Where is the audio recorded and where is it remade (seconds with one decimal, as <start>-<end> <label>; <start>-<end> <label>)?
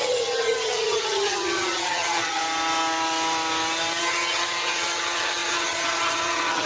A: 0.0-2.4 remade; 2.4-4.0 recorded; 4.0-6.7 remade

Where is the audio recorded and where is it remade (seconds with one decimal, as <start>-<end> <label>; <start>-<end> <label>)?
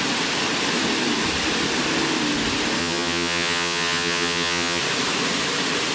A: 0.0-2.8 recorded; 2.8-4.8 remade; 4.8-5.9 recorded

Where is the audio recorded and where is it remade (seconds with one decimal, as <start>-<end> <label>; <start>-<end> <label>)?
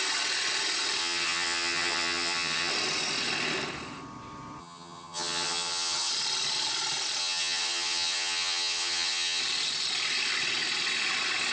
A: 0.0-1.0 recorded; 1.0-2.7 remade; 2.7-4.6 recorded; 4.6-6.1 remade; 6.1-7.2 recorded; 7.2-9.4 remade; 9.4-11.5 recorded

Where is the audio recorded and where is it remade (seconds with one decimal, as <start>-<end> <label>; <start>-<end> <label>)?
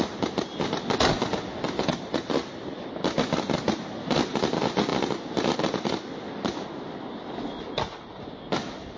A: 0.0-9.0 recorded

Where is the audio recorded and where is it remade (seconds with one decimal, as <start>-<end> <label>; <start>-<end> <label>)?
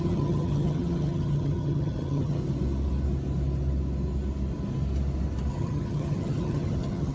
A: 0.0-2.4 remade; 2.4-5.5 recorded; 5.5-7.1 remade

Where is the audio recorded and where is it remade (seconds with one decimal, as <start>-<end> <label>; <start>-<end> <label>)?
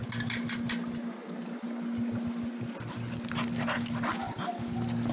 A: 0.0-5.1 recorded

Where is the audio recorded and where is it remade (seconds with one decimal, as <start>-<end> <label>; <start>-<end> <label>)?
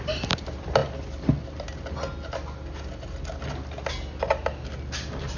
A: 0.0-5.4 recorded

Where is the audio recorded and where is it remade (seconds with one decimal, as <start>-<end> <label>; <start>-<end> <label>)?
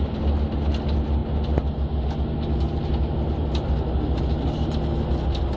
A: 0.0-5.6 recorded